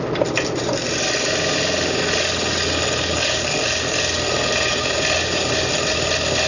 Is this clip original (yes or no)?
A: yes